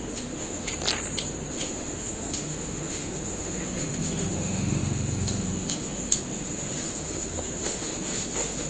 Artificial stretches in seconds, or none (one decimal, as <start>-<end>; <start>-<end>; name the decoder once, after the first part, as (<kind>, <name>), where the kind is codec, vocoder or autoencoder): 0.0-0.7 (autoencoder, DAC-VAE); 1.5-8.7